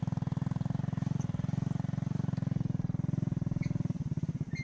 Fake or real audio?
real